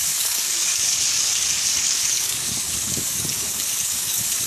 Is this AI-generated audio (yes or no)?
yes